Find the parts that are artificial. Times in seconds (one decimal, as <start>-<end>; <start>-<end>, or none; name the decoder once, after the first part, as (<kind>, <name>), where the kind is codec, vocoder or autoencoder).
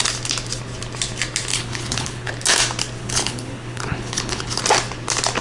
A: 1.5-2.3 (codec, HILCodec); 3.0-4.6